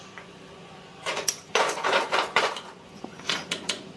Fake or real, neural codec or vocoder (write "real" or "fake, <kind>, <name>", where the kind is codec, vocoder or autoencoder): fake, vocoder, Vocos